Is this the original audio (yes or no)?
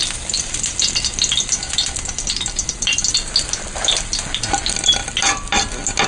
yes